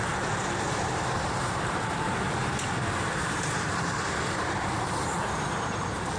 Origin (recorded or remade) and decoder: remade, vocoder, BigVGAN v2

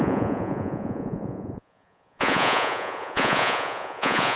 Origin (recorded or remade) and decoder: remade, vocoder, Vocos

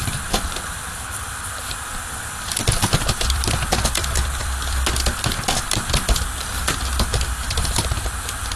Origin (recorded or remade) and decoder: remade, vocoder, BigVGAN v2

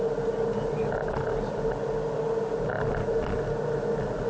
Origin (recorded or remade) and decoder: recorded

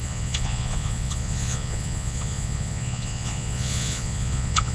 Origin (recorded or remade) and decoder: remade, vocoder, Vocos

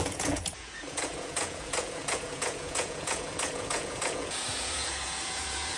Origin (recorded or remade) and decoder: remade, vocoder, Vocos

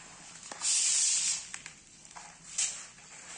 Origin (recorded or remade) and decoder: recorded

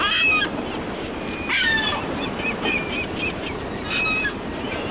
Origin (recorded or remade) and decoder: remade, vocoder, BigVGAN v2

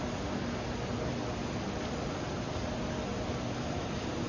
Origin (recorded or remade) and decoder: recorded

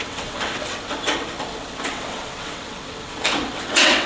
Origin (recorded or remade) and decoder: remade, vocoder, WaveNeXt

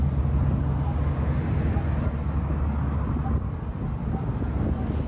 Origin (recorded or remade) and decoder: recorded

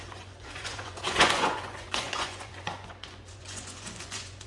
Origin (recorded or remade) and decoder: remade, vocoder, Vocos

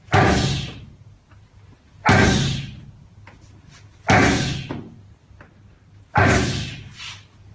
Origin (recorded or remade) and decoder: recorded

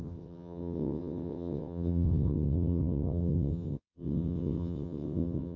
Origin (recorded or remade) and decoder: remade, vocoder, WaveNeXt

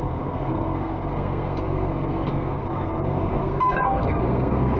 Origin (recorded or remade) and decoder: remade, codec, SNAC